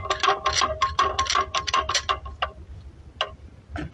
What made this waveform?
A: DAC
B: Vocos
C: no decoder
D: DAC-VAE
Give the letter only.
C